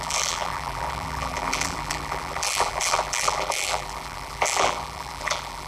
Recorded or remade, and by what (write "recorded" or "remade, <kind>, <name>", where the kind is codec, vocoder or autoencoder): remade, vocoder, BigVGAN v2